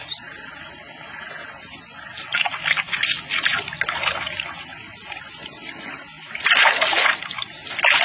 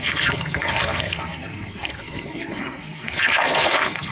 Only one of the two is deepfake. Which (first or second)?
second